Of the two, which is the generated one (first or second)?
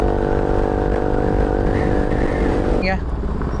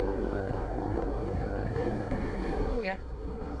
second